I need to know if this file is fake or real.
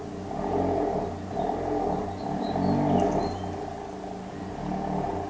real